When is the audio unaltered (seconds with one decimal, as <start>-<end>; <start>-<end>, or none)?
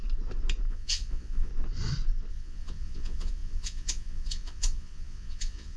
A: 0.0-0.7; 1.5-2.3